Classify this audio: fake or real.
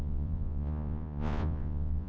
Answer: fake